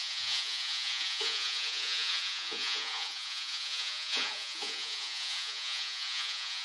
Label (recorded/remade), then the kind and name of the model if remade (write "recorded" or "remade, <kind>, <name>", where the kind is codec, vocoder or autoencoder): remade, vocoder, Vocos